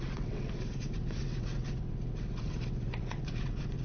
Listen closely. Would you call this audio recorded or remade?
remade